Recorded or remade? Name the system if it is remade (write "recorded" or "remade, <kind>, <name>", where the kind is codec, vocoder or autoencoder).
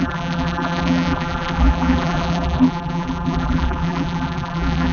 remade, vocoder, BigVGAN v2